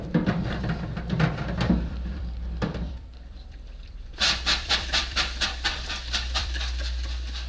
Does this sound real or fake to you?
fake